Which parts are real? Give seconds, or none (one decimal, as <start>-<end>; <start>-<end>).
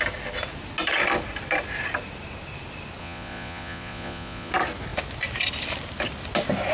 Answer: 0.0-3.0; 4.5-6.7